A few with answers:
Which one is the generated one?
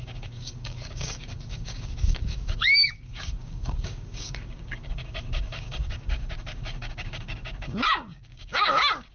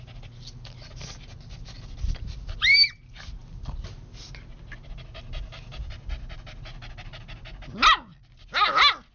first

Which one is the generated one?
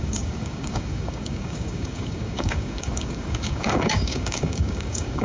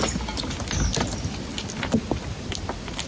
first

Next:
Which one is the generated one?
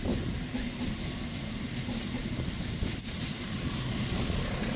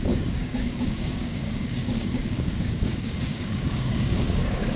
second